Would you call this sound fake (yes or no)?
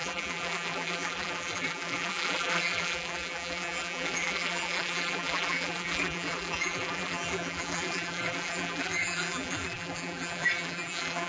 yes